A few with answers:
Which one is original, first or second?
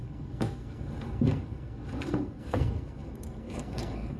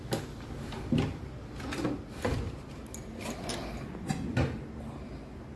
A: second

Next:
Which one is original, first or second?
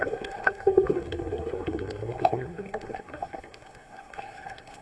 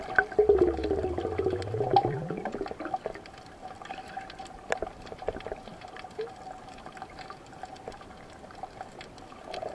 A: second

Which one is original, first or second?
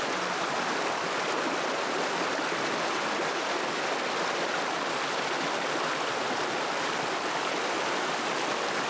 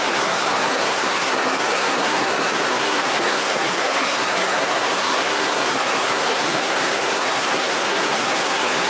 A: first